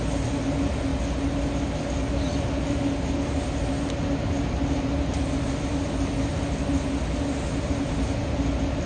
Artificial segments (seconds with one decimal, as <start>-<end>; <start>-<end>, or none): none